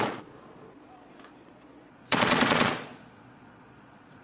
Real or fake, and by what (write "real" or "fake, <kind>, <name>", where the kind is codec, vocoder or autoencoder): fake, vocoder, Vocos